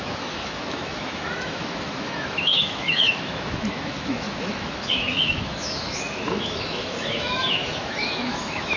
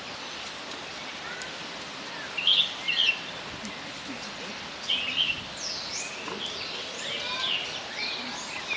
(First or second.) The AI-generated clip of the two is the first